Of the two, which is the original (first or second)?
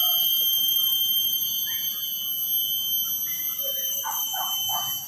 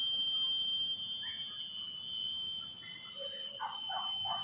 first